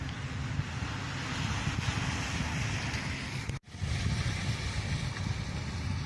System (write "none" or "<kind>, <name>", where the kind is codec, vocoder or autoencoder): none